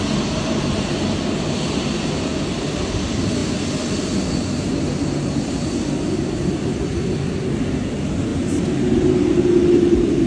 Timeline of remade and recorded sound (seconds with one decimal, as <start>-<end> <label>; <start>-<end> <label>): 0.0-10.3 recorded